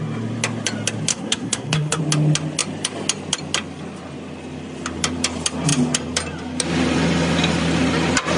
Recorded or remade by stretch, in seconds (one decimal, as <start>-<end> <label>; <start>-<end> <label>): 0.0-1.1 recorded; 1.1-2.0 remade; 2.0-8.4 recorded